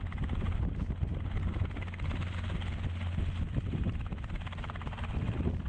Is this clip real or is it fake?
real